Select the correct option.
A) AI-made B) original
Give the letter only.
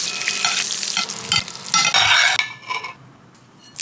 B